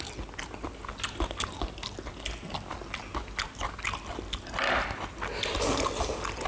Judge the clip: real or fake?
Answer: real